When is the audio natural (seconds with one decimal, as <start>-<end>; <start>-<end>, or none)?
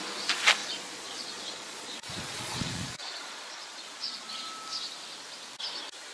0.0-0.6; 4.3-6.1